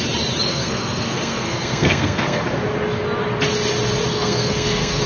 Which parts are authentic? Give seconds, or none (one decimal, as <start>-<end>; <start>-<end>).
0.0-0.5; 2.4-4.1